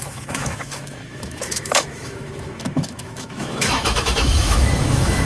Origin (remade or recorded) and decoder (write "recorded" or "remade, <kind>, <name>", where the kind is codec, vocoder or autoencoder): remade, autoencoder, DAC-VAE